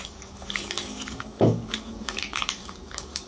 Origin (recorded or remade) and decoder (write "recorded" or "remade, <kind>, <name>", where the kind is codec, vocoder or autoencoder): remade, codec, DAC